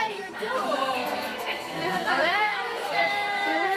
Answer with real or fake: fake